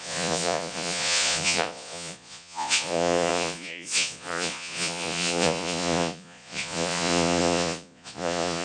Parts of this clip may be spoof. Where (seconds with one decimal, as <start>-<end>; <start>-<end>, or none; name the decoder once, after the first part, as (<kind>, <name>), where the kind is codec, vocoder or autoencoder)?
0.0-8.6 (vocoder, Vocos)